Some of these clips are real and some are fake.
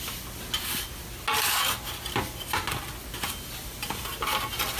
real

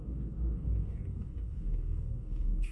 fake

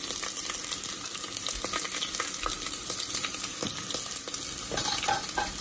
real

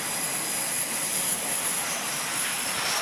real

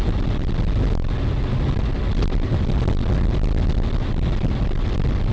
real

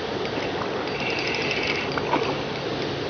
real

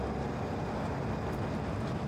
real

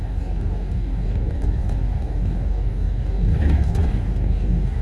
fake